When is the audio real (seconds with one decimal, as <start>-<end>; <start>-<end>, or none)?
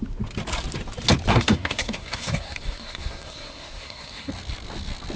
0.0-1.3; 4.3-5.2